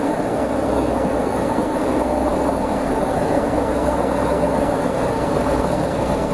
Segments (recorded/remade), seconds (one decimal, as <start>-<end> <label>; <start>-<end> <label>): 0.0-6.3 remade